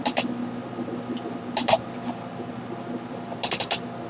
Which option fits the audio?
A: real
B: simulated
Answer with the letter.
A